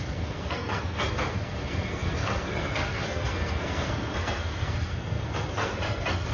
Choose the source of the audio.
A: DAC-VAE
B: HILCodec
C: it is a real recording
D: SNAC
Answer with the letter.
D